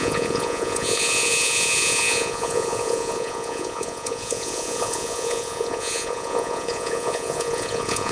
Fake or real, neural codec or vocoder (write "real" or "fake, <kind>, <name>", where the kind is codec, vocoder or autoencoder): fake, vocoder, Vocos